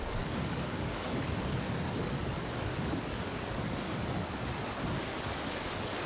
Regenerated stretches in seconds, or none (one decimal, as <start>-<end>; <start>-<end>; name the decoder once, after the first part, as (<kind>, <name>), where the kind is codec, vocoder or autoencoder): 0.0-6.1 (codec, DAC)